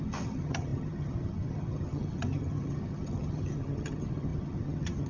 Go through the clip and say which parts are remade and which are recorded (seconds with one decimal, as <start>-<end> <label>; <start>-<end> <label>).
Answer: 0.0-5.1 remade